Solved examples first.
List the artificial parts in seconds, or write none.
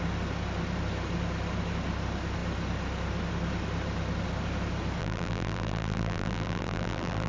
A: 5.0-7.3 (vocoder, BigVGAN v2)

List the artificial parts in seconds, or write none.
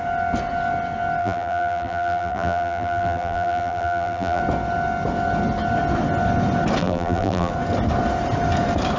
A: 1.2-4.4 (vocoder, BigVGAN v2); 6.8-7.5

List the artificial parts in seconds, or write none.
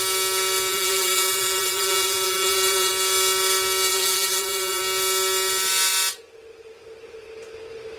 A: 0.7-2.9 (vocoder, BigVGAN v2); 3.9-4.8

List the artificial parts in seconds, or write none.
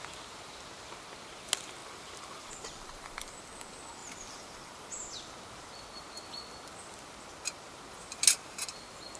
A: 1.8-3.4 (vocoder, BigVGAN v2); 4.0-4.9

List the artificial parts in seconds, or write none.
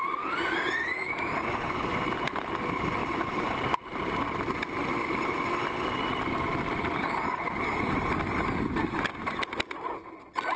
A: 3.0-4.2 (vocoder, BigVGAN v2)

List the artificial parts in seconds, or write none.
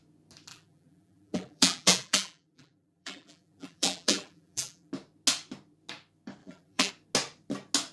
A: 0.5-4.9 (vocoder, BigVGAN v2); 6.4-6.9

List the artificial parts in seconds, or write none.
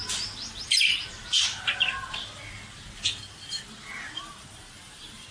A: 0.6-1.0 (vocoder, BigVGAN v2); 4.2-5.3